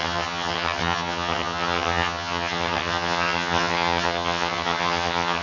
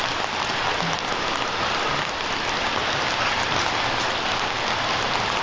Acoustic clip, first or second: second